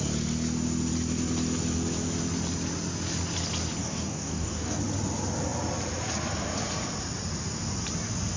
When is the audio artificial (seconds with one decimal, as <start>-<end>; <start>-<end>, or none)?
3.8-4.8